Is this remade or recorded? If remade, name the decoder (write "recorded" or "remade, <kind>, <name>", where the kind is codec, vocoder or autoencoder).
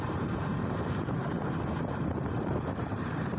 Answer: remade, vocoder, BigVGAN v2